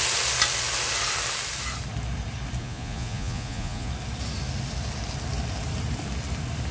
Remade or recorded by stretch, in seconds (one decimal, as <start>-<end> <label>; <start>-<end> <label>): 0.0-2.6 recorded; 2.6-3.9 remade; 3.9-6.7 recorded